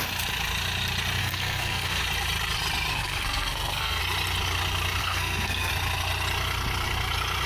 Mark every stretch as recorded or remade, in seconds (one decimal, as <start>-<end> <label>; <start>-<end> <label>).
0.0-1.2 recorded; 1.2-2.0 remade; 2.0-2.9 recorded; 2.9-4.0 remade; 4.0-5.0 recorded; 5.0-5.7 remade; 5.7-7.5 recorded

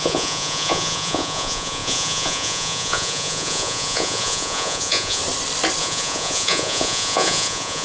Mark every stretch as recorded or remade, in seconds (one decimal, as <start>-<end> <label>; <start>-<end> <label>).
0.0-5.2 remade; 5.2-5.8 recorded; 5.8-7.8 remade

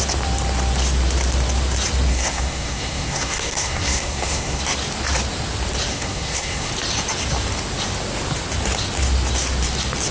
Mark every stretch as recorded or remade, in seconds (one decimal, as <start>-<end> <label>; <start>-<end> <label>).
0.0-2.1 recorded; 2.1-4.6 remade; 4.6-5.9 recorded; 5.9-6.7 remade; 6.7-10.1 recorded

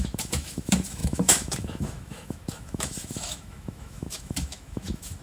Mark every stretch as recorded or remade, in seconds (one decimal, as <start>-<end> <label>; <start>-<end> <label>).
0.0-5.2 remade

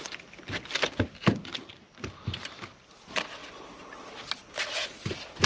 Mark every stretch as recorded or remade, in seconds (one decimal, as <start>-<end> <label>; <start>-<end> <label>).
0.0-1.5 recorded; 1.5-2.6 remade; 2.6-3.4 recorded; 3.4-4.3 remade; 4.3-5.5 recorded

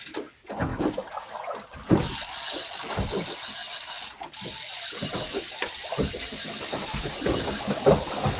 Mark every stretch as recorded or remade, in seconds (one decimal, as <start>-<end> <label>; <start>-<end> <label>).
0.0-8.4 recorded

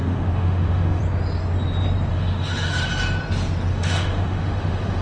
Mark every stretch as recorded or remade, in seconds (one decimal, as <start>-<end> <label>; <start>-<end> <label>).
0.0-1.0 remade; 1.0-2.1 recorded; 2.1-2.9 remade; 2.9-3.7 recorded; 3.7-5.0 remade